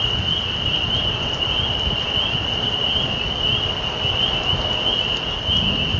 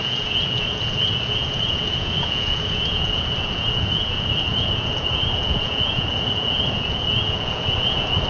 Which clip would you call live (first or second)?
first